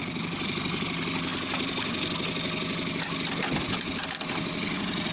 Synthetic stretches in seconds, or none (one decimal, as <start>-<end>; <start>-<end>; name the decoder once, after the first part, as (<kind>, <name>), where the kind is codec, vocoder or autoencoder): none